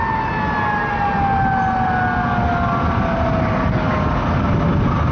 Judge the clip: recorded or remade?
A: recorded